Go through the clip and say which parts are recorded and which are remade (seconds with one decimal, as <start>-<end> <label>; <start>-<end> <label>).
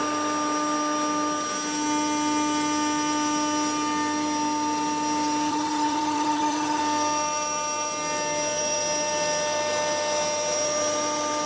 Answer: 0.0-5.5 recorded; 5.5-6.8 remade; 6.8-11.5 recorded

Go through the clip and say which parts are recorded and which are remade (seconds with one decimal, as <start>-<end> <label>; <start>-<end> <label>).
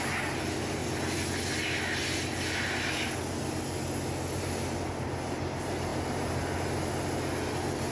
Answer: 0.0-7.9 recorded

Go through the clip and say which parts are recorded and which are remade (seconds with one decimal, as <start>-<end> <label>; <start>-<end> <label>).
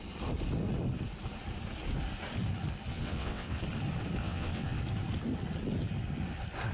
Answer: 0.0-2.9 recorded; 2.9-3.6 remade; 3.6-4.2 recorded; 4.2-4.8 remade; 4.8-6.7 recorded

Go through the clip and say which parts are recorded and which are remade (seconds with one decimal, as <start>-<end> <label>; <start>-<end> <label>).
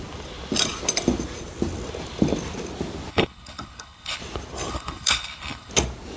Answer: 0.0-3.1 recorded; 3.1-4.2 remade; 4.2-4.7 recorded; 4.7-5.7 remade; 5.7-6.2 recorded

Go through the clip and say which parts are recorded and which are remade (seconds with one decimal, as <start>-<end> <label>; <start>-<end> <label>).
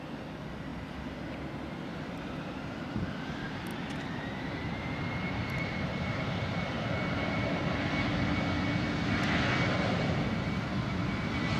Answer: 0.0-3.7 recorded; 3.7-7.8 remade; 7.8-11.6 recorded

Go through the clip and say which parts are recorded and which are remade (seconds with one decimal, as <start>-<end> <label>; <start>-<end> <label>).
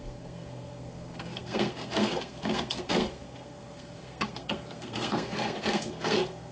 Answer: 0.0-6.5 remade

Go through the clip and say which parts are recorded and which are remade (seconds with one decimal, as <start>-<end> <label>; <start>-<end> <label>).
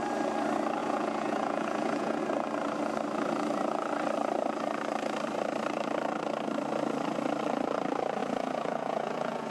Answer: 0.0-0.8 recorded; 0.8-2.2 remade; 2.2-8.2 recorded; 8.2-9.5 remade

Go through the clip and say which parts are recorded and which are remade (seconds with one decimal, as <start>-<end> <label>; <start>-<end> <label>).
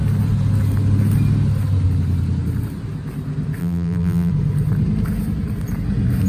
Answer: 0.0-3.6 recorded; 3.6-4.3 remade; 4.3-6.3 recorded